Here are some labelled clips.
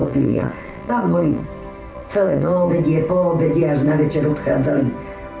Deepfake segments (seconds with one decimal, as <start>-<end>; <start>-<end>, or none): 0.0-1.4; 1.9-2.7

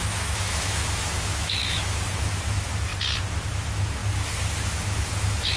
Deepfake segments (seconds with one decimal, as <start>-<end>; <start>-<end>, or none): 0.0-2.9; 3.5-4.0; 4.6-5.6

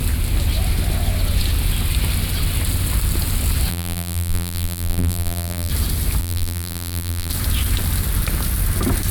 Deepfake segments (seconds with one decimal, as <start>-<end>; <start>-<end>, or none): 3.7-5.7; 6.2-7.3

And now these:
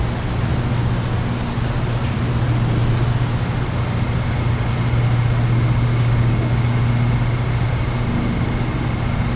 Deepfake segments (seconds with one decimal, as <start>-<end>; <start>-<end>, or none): 5.9-6.7